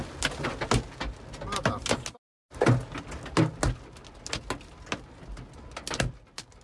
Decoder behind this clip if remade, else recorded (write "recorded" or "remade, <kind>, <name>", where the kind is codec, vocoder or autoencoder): recorded